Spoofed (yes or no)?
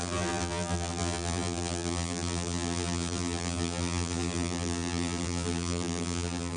yes